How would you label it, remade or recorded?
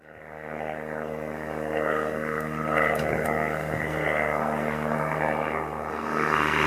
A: remade